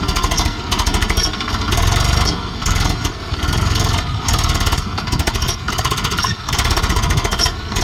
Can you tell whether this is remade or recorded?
remade